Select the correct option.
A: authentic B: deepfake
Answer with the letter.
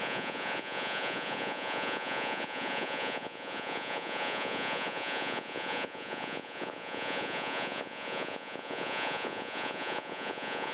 B